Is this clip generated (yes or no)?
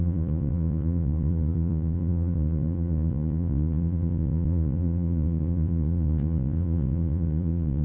yes